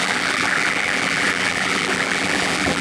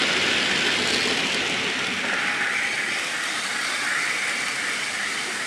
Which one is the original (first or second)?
second